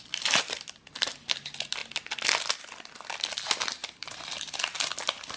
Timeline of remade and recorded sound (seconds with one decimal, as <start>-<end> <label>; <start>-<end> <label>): 0.0-3.8 recorded; 3.8-4.5 remade; 4.5-5.4 recorded